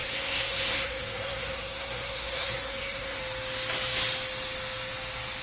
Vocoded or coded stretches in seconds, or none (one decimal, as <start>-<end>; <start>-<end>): 0.0-3.2